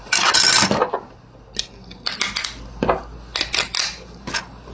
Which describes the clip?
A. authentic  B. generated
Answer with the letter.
A